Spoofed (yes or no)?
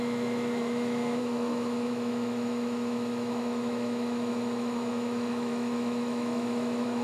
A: yes